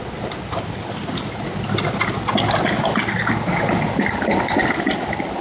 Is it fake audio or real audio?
real